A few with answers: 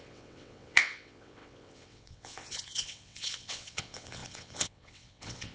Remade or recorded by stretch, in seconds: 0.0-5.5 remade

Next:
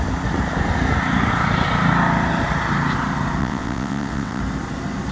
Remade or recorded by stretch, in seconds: 0.0-3.4 recorded; 3.4-4.4 remade; 4.4-5.1 recorded